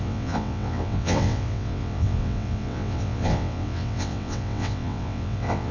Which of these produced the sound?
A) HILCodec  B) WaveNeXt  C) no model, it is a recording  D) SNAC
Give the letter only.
B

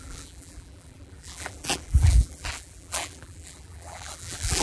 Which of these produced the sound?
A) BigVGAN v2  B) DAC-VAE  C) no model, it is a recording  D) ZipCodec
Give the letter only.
A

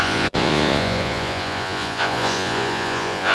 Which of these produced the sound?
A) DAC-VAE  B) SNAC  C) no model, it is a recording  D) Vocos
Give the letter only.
D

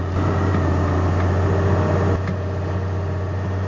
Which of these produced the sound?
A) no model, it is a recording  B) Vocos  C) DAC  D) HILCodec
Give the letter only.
A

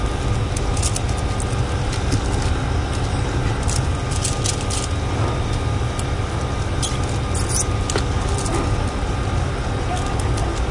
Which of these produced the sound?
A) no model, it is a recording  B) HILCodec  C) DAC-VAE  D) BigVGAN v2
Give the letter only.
A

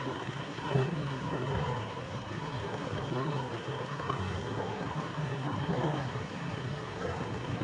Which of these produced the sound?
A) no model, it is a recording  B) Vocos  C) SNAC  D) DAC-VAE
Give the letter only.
C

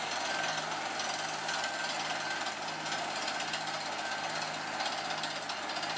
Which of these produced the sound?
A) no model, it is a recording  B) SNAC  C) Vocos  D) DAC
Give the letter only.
A